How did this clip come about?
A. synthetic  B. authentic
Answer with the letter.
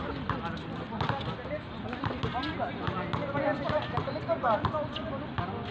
B